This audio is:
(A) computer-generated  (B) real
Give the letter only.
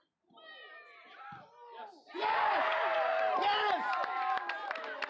A